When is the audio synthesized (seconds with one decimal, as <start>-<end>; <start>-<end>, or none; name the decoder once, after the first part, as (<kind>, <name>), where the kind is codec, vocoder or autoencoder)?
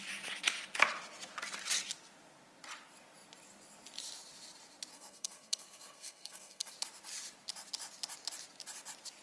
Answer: 4.9-6.7 (codec, SNAC)